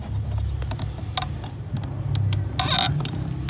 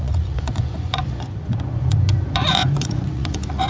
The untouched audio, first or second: first